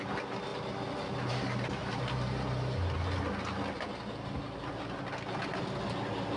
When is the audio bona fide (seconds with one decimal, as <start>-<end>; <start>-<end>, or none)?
0.0-6.4